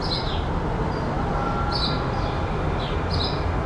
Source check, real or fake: real